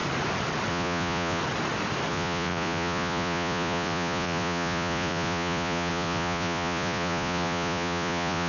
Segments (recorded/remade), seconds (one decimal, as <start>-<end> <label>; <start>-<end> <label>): 0.0-0.7 recorded; 0.7-1.4 remade; 1.4-2.1 recorded; 2.1-8.5 remade

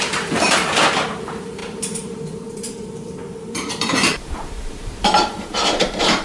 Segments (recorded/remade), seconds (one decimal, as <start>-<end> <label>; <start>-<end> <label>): 0.0-6.2 remade

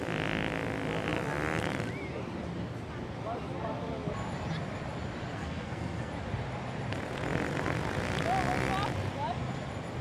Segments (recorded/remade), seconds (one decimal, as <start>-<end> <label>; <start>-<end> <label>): 0.0-5.3 recorded; 5.3-6.1 remade; 6.1-10.0 recorded

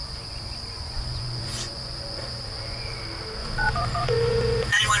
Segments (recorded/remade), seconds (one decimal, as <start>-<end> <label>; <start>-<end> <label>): 0.0-3.0 remade; 3.0-3.4 recorded; 3.4-5.0 remade